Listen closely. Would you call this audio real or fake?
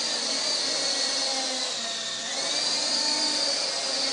real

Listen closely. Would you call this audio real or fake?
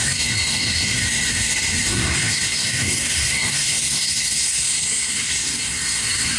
fake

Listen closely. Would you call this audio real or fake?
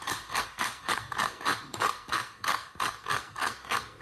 fake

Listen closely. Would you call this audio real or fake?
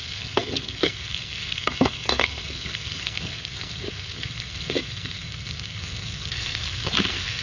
fake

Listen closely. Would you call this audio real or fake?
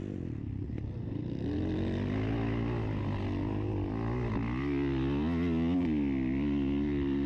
real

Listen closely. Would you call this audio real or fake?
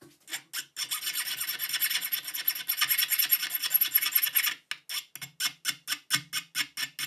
real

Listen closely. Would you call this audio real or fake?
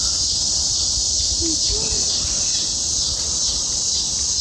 real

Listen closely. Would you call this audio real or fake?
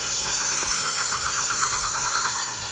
fake